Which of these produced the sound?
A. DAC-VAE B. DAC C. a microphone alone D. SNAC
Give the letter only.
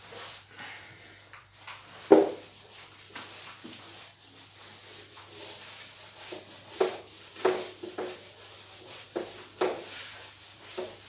C